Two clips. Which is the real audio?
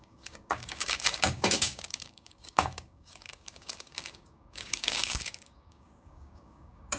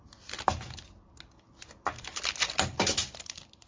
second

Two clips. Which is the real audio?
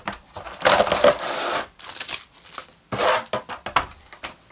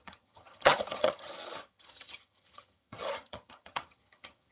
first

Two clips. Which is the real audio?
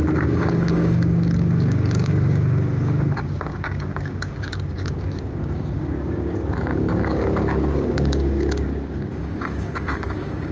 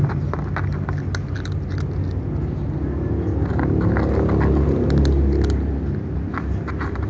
second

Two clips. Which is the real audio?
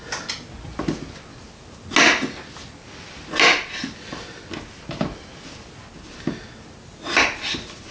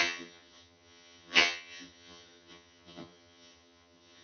first